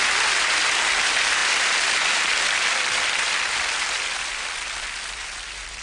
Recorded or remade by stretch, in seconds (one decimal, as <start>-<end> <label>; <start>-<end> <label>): 0.0-5.8 recorded